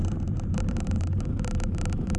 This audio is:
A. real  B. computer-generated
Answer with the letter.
B